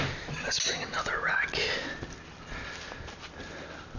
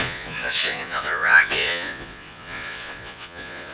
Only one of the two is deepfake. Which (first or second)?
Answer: second